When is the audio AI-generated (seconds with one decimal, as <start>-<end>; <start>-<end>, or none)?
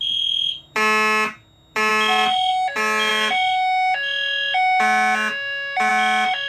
none